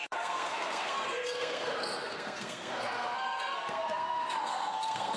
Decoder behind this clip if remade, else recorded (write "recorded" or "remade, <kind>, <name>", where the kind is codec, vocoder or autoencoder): remade, codec, SNAC